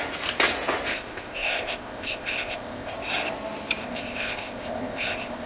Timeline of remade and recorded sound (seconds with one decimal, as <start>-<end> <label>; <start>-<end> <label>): 0.0-0.9 recorded; 0.9-2.9 remade; 2.9-3.8 recorded; 3.8-5.5 remade